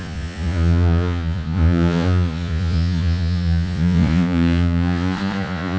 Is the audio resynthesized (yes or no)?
yes